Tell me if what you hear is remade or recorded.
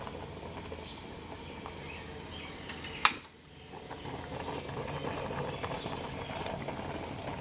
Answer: recorded